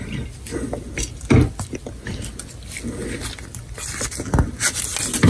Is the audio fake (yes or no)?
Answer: no